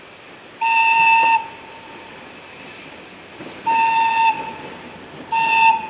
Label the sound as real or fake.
real